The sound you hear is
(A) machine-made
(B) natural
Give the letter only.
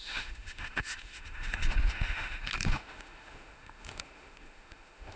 A